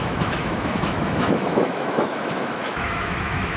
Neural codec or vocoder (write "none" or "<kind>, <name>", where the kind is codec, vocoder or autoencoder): autoencoder, DAC-VAE